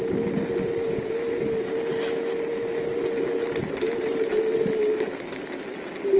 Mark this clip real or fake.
real